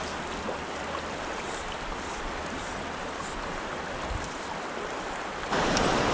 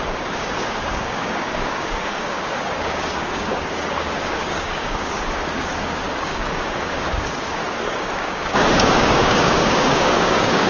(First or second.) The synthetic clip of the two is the second